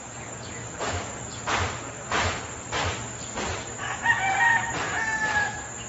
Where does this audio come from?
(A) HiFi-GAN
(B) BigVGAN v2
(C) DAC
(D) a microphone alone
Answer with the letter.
D